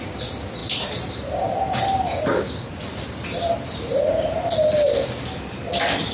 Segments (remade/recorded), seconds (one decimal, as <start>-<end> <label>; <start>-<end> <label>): 0.0-6.1 recorded